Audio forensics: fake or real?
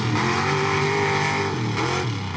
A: real